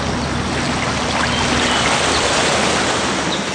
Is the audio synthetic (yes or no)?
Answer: no